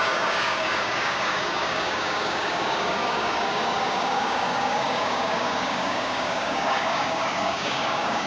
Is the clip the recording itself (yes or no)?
no